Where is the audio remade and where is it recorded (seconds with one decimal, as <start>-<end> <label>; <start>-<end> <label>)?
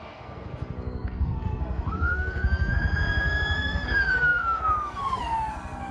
0.0-5.9 remade